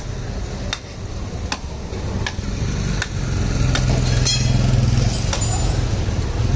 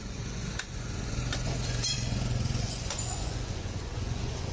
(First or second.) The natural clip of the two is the first